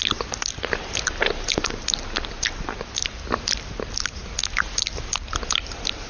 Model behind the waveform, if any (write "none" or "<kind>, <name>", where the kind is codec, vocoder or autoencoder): none